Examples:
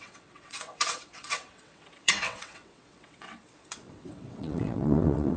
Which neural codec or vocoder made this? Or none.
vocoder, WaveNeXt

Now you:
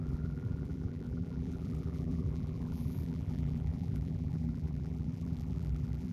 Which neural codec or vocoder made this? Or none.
vocoder, BigVGAN v2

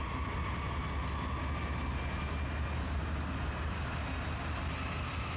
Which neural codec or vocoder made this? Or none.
none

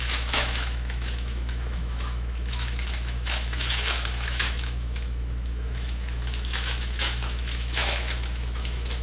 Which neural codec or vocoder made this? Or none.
autoencoder, DAC-VAE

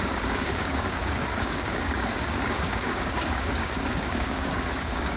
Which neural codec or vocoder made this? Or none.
codec, DAC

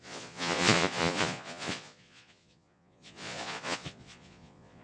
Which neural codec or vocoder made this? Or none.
vocoder, Vocos